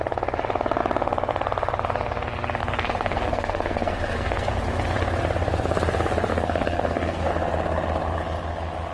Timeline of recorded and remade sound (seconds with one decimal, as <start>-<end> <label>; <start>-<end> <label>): 0.0-2.6 recorded; 2.6-4.5 remade; 4.5-6.3 recorded; 6.3-7.3 remade; 7.3-8.9 recorded

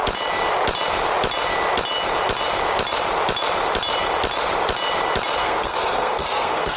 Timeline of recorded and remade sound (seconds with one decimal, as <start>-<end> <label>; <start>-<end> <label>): 0.0-5.4 recorded; 5.4-6.8 remade

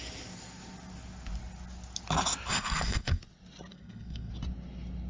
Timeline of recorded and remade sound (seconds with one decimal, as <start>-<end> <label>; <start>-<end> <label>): 0.0-2.5 recorded; 2.5-3.2 remade; 3.2-3.7 recorded; 3.7-4.3 remade; 4.3-5.1 recorded

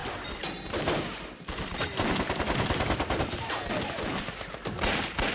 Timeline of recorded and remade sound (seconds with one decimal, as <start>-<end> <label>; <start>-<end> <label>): 0.0-5.3 recorded